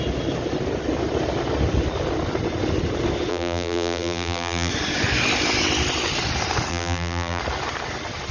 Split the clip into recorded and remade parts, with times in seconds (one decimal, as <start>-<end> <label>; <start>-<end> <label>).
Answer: 0.0-3.3 recorded; 3.3-4.7 remade; 4.7-6.7 recorded; 6.7-7.4 remade; 7.4-8.3 recorded